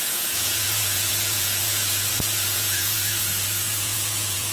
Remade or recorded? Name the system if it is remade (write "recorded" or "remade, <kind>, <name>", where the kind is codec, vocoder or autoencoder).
remade, vocoder, Vocos